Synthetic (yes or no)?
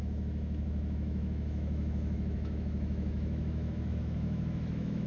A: yes